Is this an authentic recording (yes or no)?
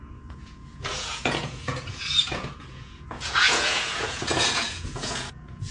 no